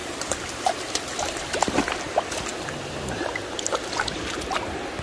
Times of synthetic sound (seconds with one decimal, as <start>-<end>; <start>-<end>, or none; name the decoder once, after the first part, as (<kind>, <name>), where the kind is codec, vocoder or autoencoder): 0.0-1.8 (vocoder, BigVGAN v2)